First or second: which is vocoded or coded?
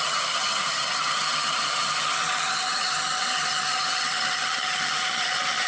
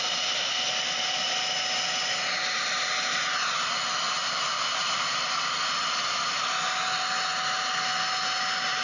first